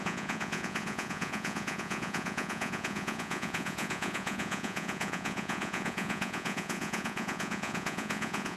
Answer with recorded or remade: remade